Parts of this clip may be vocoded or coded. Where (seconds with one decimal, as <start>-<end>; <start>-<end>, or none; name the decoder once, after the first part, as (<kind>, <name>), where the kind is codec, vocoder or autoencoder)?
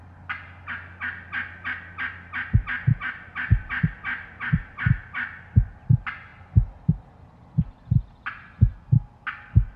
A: none